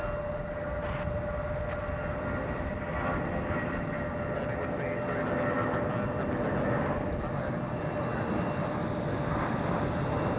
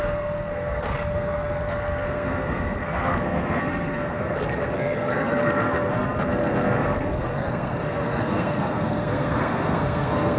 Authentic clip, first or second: first